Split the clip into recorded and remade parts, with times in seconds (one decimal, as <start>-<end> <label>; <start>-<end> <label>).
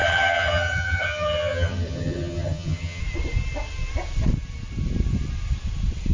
0.0-3.0 remade; 3.0-6.1 recorded